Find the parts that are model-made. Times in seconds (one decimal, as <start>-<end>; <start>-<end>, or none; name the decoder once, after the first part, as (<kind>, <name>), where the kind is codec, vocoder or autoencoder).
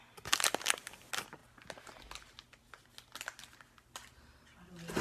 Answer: none